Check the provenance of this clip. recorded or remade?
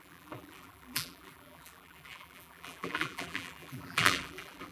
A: remade